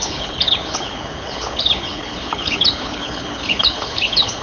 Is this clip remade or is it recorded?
remade